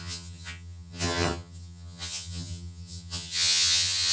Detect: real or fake fake